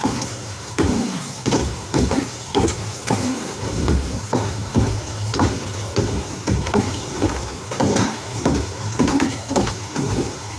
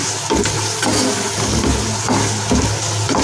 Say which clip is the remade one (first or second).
first